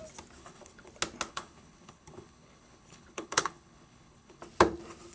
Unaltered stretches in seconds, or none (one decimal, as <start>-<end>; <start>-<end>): 0.0-0.4; 0.9-1.3; 4.4-5.1